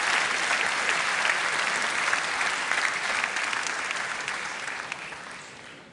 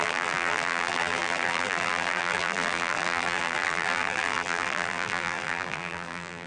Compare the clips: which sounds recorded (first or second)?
first